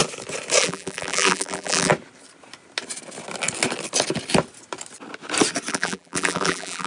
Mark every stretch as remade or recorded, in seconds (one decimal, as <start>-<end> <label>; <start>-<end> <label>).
0.0-0.6 recorded; 0.6-1.9 remade; 1.9-5.7 recorded; 5.7-6.9 remade